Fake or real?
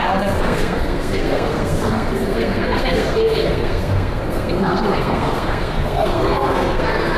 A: fake